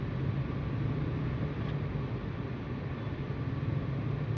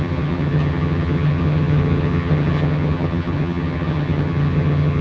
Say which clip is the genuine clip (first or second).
first